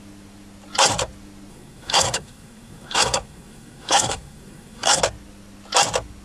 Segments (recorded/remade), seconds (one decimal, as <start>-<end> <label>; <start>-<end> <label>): 0.0-1.5 recorded; 1.5-5.0 remade; 5.0-6.2 recorded